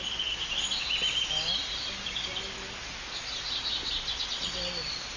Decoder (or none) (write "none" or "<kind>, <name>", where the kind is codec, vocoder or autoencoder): none